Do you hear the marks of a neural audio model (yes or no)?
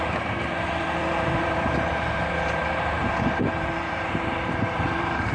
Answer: yes